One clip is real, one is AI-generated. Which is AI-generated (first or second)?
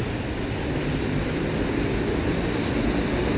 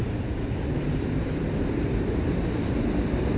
second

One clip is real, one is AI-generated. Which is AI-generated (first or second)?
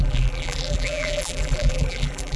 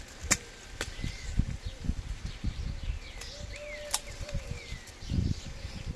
first